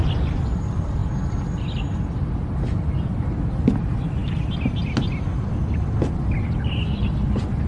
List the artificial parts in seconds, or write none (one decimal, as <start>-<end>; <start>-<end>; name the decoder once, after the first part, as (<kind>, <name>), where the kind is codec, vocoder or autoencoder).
none